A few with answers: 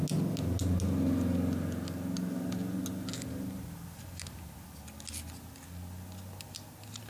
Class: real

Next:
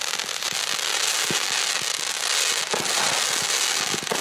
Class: real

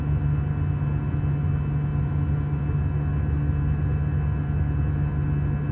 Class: real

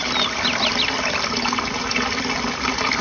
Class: real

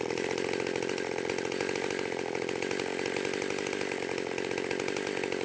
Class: real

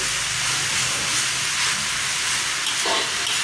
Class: real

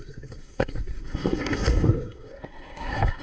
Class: fake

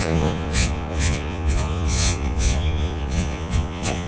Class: fake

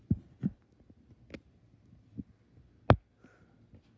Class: real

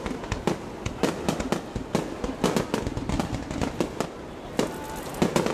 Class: real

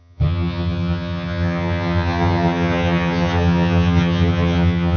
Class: fake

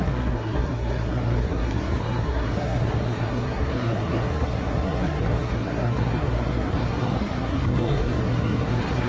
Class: fake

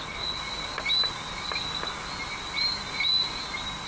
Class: real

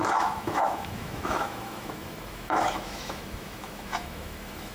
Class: fake